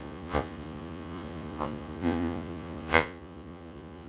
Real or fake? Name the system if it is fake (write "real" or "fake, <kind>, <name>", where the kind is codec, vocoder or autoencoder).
fake, vocoder, Vocos